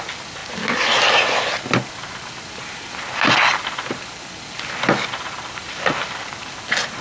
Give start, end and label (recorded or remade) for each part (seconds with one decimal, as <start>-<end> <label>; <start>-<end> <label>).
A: 0.0-7.0 recorded

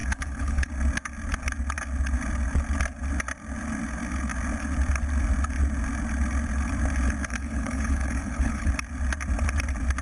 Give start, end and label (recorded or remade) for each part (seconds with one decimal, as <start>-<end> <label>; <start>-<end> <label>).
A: 0.0-0.7 remade; 0.7-7.2 recorded; 7.2-8.7 remade; 8.7-10.0 recorded

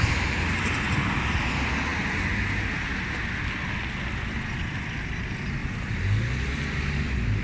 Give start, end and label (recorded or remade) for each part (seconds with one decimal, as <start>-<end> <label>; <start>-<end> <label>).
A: 0.0-7.4 recorded

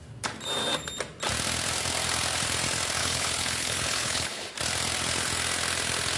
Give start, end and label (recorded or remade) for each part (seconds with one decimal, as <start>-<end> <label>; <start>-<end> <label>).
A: 0.0-3.0 recorded; 3.0-4.5 remade; 4.5-6.2 recorded

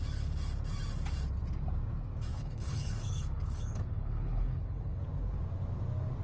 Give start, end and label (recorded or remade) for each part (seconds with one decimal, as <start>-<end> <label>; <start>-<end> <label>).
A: 0.0-2.3 recorded; 2.3-5.0 remade; 5.0-6.2 recorded

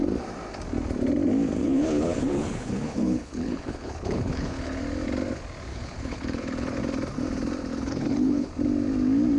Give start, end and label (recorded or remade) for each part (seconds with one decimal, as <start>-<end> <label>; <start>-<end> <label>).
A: 0.0-1.6 recorded; 1.6-4.8 remade; 4.8-5.7 recorded; 5.7-6.8 remade; 6.8-7.7 recorded; 7.7-8.5 remade; 8.5-9.4 recorded

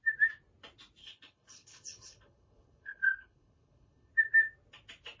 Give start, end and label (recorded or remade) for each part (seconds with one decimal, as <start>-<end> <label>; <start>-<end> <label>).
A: 0.0-1.0 recorded; 1.0-4.1 remade; 4.1-5.2 recorded

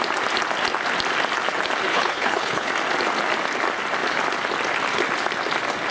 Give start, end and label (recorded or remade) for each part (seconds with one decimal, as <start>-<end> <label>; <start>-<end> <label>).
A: 0.0-1.9 recorded; 1.9-2.7 remade; 2.7-5.9 recorded